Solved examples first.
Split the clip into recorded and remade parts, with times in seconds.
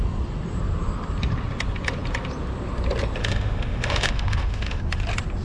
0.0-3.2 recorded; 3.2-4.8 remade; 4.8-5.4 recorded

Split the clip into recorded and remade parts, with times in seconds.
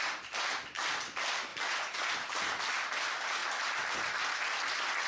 0.0-5.1 recorded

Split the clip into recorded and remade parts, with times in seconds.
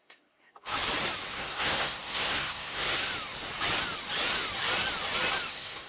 0.0-0.7 remade; 0.7-1.3 recorded; 1.3-3.1 remade; 3.1-5.5 recorded; 5.5-5.9 remade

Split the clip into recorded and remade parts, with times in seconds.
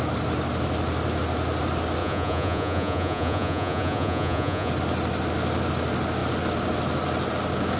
0.0-2.0 recorded; 2.0-4.7 remade; 4.7-7.8 recorded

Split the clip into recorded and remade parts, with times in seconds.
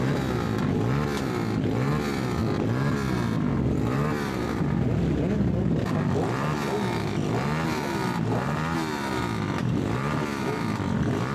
0.0-11.3 recorded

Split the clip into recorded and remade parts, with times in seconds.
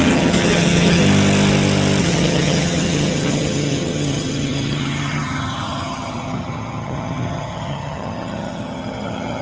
0.0-1.0 remade; 1.0-2.0 recorded; 2.0-9.4 remade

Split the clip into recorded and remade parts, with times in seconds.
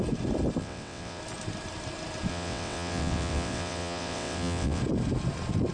0.0-0.6 recorded; 0.6-1.2 remade; 1.2-2.3 recorded; 2.3-4.8 remade; 4.8-5.7 recorded